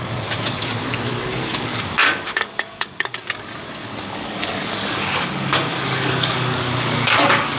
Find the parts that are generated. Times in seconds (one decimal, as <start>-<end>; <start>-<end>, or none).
0.0-7.6